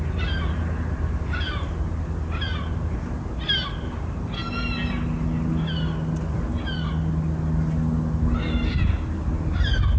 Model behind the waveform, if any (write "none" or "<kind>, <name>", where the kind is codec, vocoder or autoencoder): none